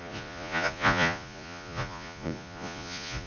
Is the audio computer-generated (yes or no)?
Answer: yes